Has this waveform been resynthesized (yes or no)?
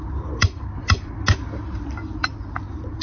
no